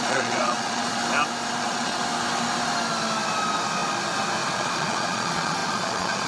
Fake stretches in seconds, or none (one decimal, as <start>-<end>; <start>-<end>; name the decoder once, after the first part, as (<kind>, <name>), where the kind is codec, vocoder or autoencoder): 0.0-1.0 (vocoder, Vocos); 1.6-2.0; 4.5-6.3